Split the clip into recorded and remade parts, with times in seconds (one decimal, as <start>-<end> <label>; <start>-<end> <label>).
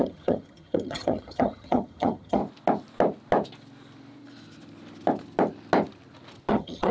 0.0-2.4 remade; 2.4-6.5 recorded; 6.5-6.9 remade